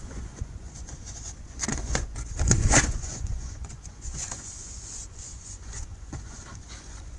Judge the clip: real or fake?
fake